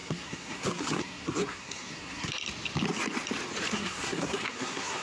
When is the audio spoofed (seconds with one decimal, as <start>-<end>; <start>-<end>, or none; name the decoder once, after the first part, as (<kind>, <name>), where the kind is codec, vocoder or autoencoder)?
0.0-2.3 (codec, SNAC); 3.7-5.0